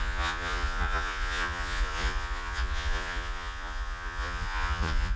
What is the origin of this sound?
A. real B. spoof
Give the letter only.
B